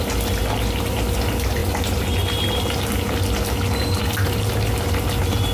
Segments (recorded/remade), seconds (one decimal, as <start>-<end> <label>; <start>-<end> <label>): 0.0-5.5 recorded